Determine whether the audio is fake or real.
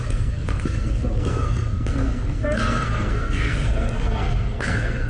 fake